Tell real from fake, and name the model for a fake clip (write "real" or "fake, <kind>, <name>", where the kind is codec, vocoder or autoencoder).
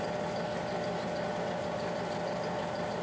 real